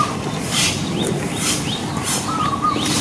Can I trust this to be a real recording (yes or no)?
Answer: yes